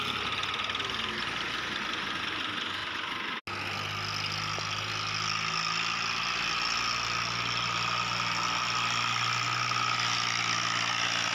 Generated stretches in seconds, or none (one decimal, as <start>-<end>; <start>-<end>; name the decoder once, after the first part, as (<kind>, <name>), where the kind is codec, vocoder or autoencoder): none